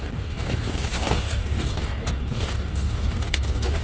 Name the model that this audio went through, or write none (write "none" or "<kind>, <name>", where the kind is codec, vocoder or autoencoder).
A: codec, DAC